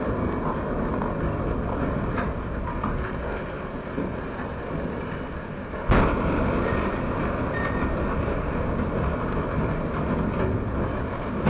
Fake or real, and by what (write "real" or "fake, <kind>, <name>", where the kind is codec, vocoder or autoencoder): real